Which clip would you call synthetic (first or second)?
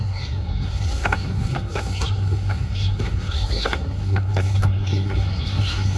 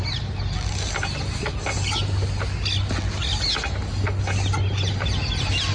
first